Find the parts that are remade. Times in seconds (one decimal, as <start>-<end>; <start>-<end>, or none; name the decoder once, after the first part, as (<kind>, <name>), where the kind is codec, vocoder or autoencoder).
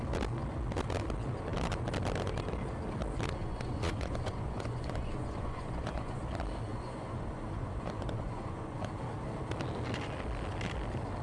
3.4-6.2 (vocoder, Vocos); 6.7-8.9